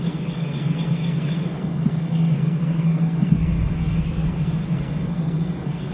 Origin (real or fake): fake